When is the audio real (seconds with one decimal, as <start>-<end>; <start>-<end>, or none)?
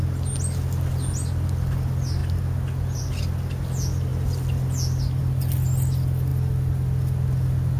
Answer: 0.0-7.8